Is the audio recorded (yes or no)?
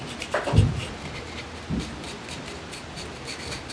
yes